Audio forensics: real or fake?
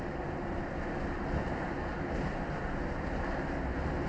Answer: real